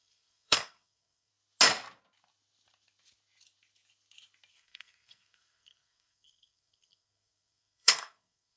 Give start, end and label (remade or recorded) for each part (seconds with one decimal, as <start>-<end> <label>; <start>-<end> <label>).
0.0-1.3 remade; 1.3-4.5 recorded; 4.5-8.6 remade